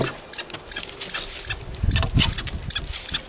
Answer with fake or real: real